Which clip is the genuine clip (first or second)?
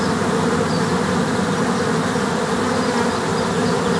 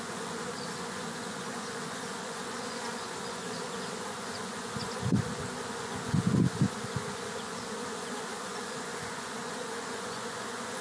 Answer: first